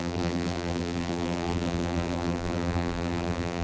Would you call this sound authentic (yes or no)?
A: no